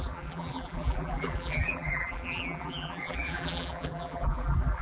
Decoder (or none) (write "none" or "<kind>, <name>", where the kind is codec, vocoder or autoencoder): vocoder, BigVGAN v2